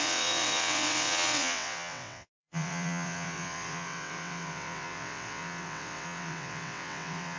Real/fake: fake